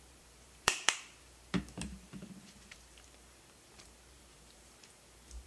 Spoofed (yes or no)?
yes